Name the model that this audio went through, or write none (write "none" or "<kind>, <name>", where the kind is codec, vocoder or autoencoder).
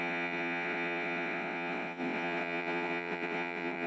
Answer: vocoder, WaveNeXt